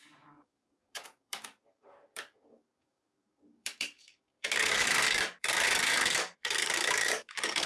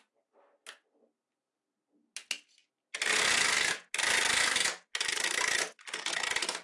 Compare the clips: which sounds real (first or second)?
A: second